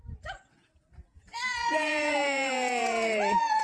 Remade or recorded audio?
remade